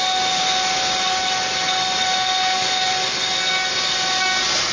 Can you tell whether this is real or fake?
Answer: real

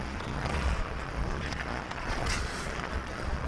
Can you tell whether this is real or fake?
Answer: fake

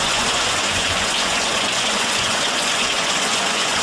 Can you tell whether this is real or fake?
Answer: fake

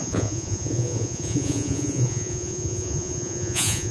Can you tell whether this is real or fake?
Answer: fake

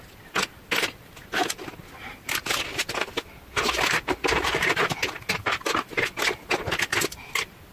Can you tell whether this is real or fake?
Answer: real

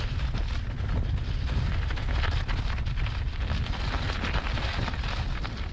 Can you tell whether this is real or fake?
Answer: real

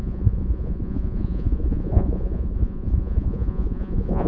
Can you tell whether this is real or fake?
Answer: fake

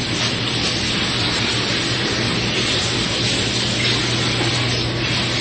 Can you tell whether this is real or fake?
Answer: real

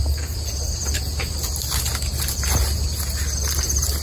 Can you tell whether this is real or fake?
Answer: real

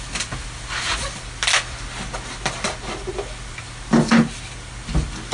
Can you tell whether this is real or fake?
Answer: real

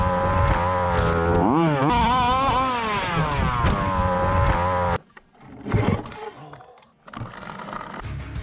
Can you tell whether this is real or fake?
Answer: real